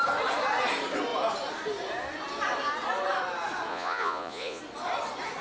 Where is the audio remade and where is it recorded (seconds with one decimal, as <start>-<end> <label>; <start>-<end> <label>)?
0.0-3.7 recorded; 3.7-4.6 remade; 4.6-5.4 recorded